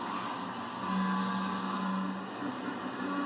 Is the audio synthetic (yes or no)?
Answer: no